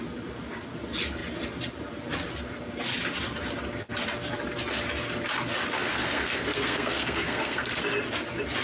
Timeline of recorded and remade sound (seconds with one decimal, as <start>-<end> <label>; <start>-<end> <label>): 0.0-5.9 recorded; 5.9-7.8 remade; 7.8-8.6 recorded